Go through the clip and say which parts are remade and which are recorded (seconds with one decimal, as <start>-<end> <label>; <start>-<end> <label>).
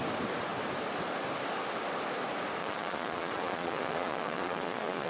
0.0-2.6 recorded; 2.6-5.1 remade